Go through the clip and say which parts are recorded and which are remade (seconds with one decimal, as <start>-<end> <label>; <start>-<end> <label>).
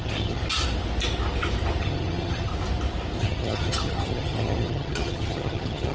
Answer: 0.0-0.4 remade; 0.4-1.8 recorded; 1.8-2.5 remade; 2.5-3.2 recorded; 3.2-5.9 remade